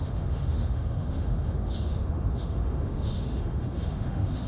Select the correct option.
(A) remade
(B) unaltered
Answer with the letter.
A